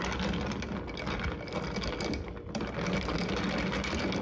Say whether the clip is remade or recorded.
recorded